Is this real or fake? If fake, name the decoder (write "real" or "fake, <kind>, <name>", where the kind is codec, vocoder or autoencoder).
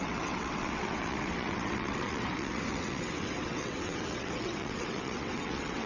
fake, vocoder, WaveNeXt